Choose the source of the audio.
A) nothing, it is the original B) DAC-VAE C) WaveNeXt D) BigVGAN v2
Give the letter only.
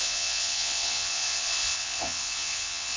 C